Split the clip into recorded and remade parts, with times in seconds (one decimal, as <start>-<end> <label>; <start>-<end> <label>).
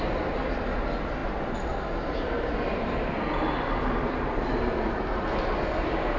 0.0-6.2 recorded